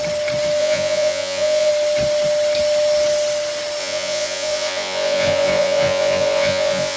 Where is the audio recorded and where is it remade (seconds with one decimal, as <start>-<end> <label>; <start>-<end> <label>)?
0.0-0.6 recorded; 0.6-1.7 remade; 1.7-3.8 recorded; 3.8-7.0 remade